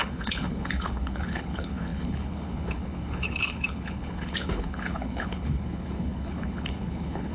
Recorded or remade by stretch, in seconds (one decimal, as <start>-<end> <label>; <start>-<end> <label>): 0.0-7.3 remade

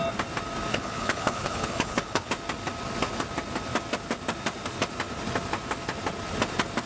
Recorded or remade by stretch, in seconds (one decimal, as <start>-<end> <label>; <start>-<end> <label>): 0.0-0.7 recorded; 0.7-2.3 remade; 2.3-6.9 recorded

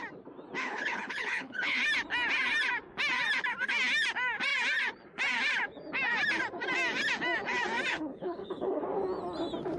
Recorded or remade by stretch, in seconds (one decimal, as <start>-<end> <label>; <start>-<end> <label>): 0.0-0.6 recorded; 0.6-1.8 remade; 1.8-7.9 recorded; 7.9-8.8 remade; 8.8-9.8 recorded

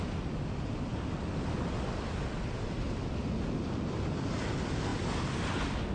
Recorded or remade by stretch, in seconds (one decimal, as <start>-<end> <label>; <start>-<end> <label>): 0.0-5.9 recorded

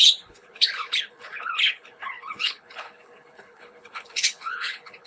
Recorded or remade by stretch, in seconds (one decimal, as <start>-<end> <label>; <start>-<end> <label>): 0.0-5.1 remade

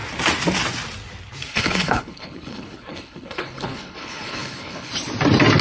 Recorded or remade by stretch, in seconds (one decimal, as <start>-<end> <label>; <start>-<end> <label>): 0.0-1.5 recorded; 1.5-4.9 remade; 4.9-5.6 recorded

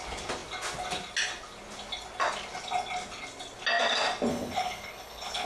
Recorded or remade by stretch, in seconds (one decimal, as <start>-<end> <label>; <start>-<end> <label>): 0.0-4.3 recorded; 4.3-5.5 remade

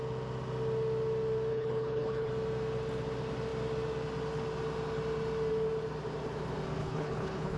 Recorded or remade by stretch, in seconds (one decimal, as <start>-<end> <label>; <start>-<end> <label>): 0.0-1.5 recorded; 1.5-2.3 remade; 2.3-6.8 recorded; 6.8-7.6 remade